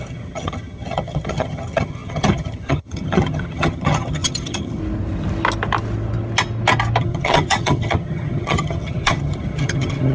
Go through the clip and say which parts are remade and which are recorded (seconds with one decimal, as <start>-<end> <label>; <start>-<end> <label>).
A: 0.0-4.8 remade; 4.8-7.0 recorded; 7.0-10.1 remade